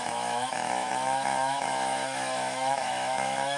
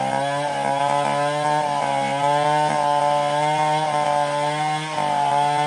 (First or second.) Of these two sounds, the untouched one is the second